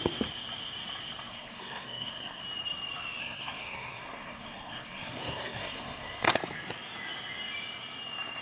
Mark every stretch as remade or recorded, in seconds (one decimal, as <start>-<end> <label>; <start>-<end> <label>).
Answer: 0.0-1.3 recorded; 1.3-2.4 remade; 2.4-3.2 recorded; 3.2-6.3 remade; 6.3-8.4 recorded